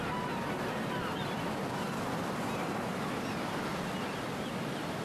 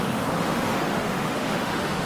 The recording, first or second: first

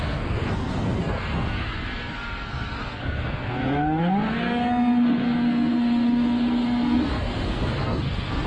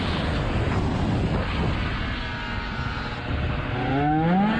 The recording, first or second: second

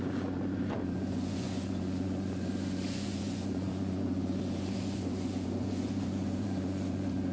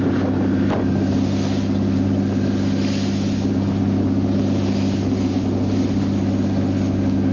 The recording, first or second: second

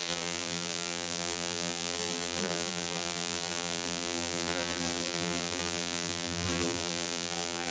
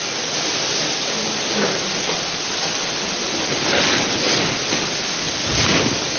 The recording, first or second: second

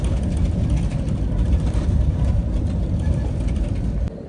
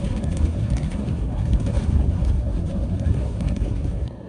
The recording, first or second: first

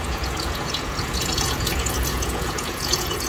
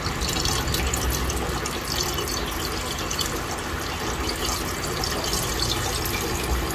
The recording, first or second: second